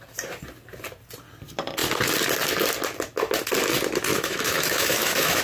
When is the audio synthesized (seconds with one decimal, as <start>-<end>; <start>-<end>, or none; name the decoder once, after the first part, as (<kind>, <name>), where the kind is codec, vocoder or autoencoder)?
4.1-5.4 (autoencoder, DAC-VAE)